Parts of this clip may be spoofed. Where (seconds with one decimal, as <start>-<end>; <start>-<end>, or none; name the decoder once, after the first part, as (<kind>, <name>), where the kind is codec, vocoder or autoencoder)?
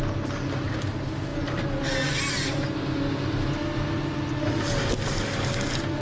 none